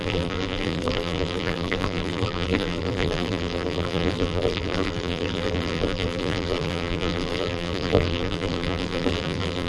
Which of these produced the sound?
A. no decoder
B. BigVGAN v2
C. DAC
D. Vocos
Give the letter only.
B